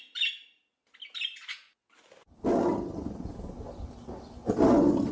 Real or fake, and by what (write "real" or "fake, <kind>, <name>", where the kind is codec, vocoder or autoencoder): real